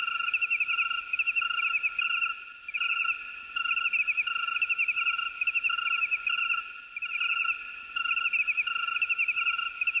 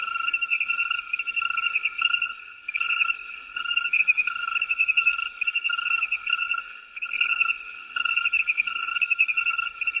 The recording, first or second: first